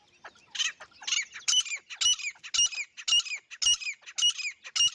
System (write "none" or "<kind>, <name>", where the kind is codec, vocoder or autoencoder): none